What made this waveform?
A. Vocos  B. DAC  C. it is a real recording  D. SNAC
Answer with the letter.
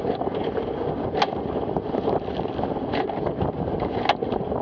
C